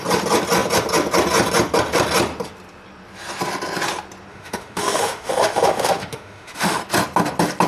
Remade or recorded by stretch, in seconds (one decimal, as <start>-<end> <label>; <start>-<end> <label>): 0.0-4.3 recorded; 4.3-6.8 remade; 6.8-7.7 recorded